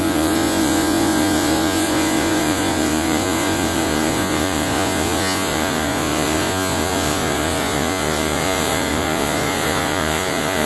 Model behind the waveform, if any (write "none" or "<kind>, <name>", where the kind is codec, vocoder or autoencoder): vocoder, Vocos